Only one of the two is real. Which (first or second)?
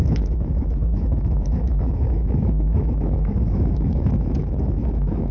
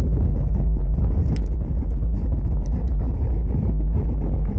second